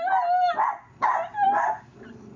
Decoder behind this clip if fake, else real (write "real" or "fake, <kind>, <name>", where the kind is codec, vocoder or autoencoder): real